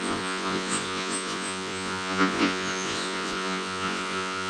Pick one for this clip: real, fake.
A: fake